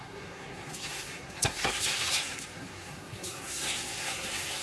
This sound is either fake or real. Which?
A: fake